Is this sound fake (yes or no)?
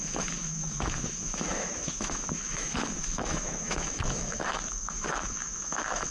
yes